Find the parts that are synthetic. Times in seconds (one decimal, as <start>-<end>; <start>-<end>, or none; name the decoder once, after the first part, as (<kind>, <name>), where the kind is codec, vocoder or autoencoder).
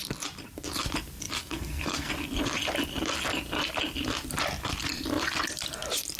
1.4-2.1 (codec, SNAC)